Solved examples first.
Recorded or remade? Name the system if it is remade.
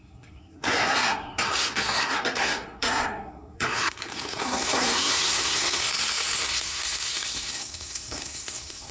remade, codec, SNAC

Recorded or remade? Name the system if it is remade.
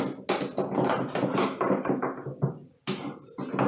recorded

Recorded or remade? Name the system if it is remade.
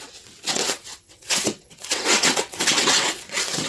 remade, vocoder, WaveNeXt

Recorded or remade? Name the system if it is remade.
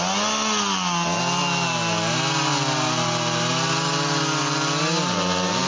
recorded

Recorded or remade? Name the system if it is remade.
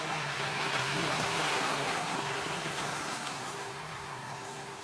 remade, codec, SNAC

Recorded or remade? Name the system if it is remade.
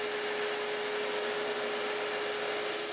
recorded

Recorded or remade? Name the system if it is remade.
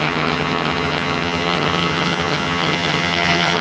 remade, vocoder, HiFi-GAN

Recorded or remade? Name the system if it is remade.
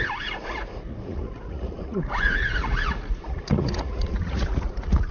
remade, vocoder, Vocos